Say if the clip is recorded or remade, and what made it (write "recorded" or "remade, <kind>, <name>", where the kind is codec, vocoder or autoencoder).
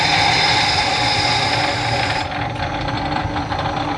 recorded